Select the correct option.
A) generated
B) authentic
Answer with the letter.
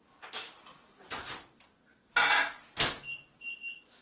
B